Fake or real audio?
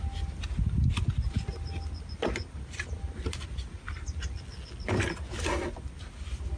real